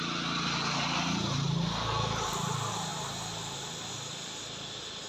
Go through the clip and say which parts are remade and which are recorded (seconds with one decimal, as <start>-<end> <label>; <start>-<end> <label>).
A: 0.0-5.1 recorded